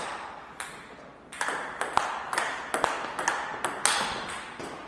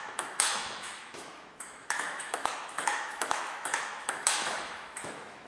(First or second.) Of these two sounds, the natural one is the first